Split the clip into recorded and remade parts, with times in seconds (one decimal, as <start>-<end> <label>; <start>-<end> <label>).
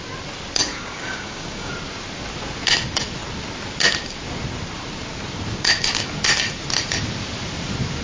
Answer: 0.0-0.7 recorded; 0.7-1.7 remade; 1.7-8.0 recorded